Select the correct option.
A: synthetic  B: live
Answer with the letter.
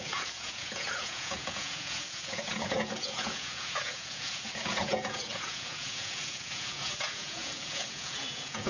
A